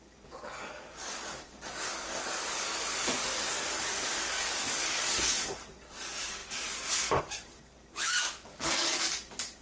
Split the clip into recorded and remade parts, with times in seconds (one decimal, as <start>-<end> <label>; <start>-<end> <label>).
0.0-9.6 remade